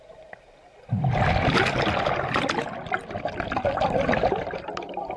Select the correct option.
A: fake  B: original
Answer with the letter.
B